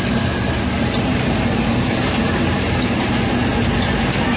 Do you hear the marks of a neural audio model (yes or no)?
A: no